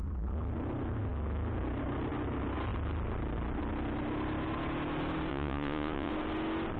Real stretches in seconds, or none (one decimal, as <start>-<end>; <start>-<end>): 0.0-5.3; 6.1-6.8

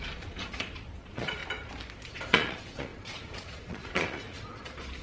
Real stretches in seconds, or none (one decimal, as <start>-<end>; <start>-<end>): 1.4-2.1

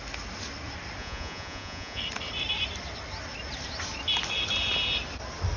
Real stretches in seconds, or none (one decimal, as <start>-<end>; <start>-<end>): 0.0-1.0; 2.0-5.6

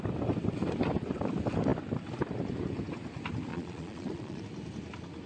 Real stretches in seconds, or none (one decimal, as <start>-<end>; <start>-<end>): 0.0-3.5; 4.4-5.3

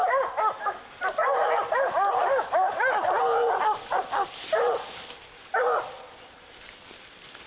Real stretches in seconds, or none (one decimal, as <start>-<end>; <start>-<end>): 0.0-7.5

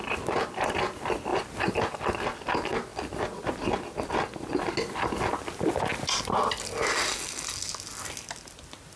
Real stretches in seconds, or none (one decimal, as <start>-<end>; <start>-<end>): 0.0-9.0